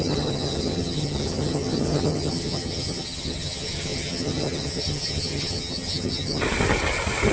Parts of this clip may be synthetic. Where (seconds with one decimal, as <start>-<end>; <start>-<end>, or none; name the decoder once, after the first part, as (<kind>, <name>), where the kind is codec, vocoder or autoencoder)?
0.0-6.4 (vocoder, HiFi-GAN)